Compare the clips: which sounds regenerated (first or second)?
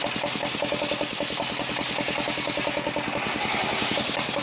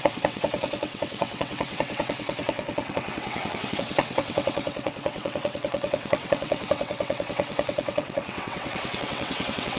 second